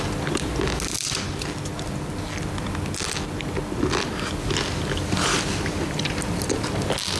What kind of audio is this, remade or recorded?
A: recorded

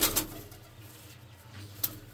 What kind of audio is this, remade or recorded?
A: recorded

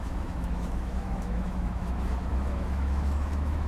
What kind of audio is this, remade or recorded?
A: remade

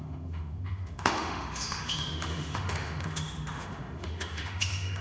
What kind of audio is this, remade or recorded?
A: remade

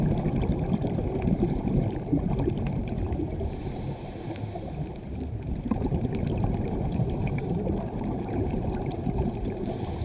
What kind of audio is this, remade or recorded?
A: remade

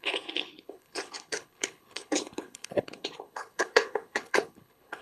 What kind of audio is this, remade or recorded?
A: remade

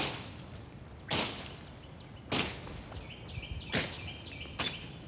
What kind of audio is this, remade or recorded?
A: recorded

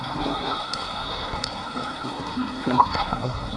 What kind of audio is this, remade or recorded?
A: remade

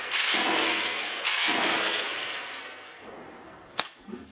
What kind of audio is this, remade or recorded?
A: remade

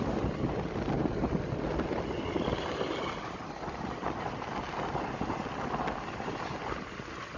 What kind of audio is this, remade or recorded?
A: recorded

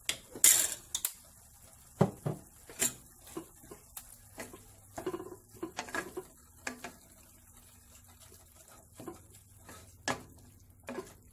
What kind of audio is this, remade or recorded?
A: recorded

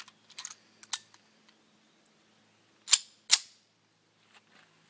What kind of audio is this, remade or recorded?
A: recorded